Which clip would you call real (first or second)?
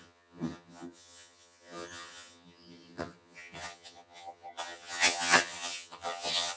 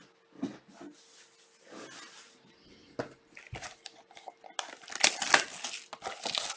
second